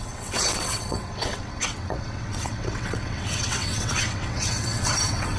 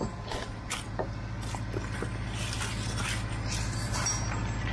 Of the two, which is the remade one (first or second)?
first